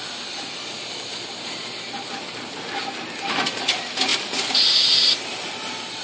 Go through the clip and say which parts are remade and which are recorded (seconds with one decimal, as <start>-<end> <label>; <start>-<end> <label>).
0.0-6.0 recorded